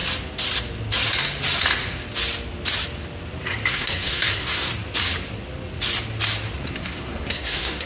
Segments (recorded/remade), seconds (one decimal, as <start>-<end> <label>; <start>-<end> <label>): 0.0-3.7 recorded; 3.7-4.7 remade; 4.7-6.7 recorded; 6.7-7.9 remade